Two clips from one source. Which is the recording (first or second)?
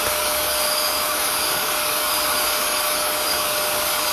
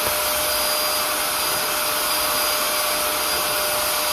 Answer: second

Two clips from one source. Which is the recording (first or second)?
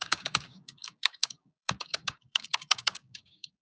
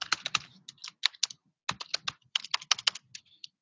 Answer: second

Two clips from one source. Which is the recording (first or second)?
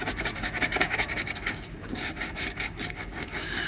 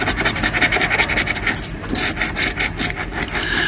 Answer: second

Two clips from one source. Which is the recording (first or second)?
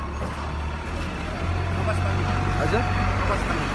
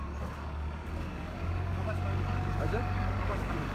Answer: first